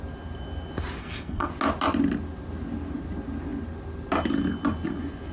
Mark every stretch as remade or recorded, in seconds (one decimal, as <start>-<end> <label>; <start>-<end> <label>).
0.0-1.0 recorded; 1.0-1.5 remade; 1.5-5.3 recorded